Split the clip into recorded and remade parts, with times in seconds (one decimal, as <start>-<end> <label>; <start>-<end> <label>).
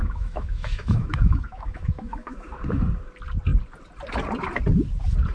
0.0-2.5 remade; 2.5-5.3 recorded